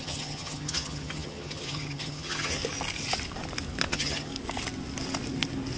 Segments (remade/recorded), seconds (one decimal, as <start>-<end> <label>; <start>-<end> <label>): 0.0-2.6 remade; 2.6-3.9 recorded; 3.9-4.3 remade; 4.3-5.8 recorded